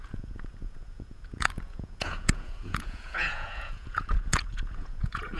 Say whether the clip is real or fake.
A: fake